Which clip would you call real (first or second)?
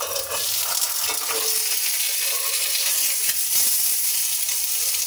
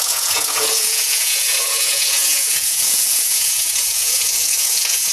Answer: first